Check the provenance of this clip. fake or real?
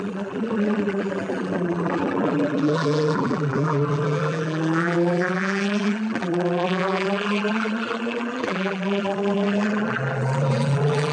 fake